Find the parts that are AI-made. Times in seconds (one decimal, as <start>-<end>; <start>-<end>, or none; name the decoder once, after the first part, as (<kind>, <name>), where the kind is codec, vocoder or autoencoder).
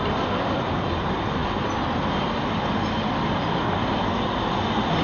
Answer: 1.4-4.4 (vocoder, BigVGAN v2)